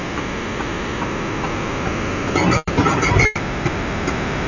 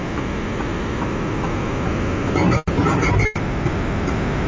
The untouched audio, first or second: second